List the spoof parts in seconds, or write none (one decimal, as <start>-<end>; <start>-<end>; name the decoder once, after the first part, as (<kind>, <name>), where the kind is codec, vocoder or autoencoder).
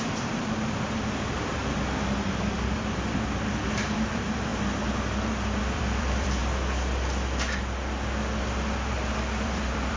0.0-1.6 (vocoder, BigVGAN v2); 2.5-4.5; 5.6-6.4; 8.9-10.0